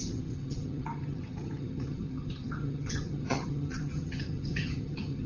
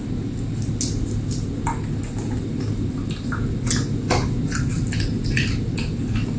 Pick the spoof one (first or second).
first